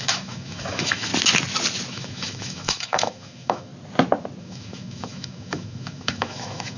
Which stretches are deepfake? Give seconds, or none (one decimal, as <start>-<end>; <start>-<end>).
0.0-1.1; 1.9-3.7; 4.4-6.8